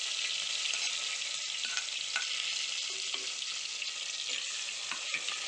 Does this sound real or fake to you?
real